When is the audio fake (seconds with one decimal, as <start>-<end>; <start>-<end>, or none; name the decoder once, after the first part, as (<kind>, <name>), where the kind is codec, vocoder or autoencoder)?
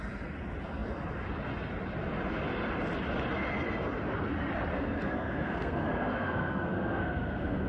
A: 4.7-7.7 (codec, SNAC)